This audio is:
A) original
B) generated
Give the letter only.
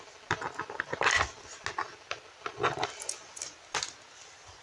A